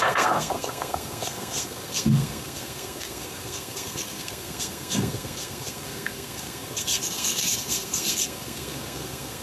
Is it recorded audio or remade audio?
remade